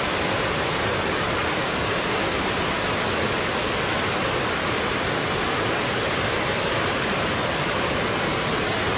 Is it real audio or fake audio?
real